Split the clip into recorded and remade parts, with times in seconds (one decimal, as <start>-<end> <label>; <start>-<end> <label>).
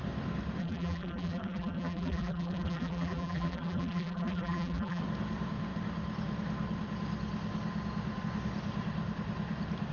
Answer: 0.0-0.6 recorded; 0.6-5.0 remade; 5.0-9.9 recorded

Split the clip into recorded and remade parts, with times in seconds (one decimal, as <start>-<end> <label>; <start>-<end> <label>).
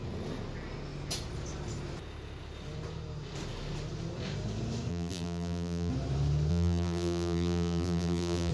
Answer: 0.0-4.9 recorded; 4.9-5.9 remade; 5.9-6.5 recorded; 6.5-8.5 remade